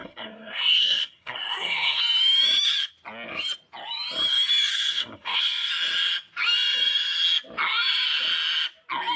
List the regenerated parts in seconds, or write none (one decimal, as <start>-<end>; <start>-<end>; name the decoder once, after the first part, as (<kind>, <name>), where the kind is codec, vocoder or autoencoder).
0.0-2.0 (codec, SNAC); 4.7-5.7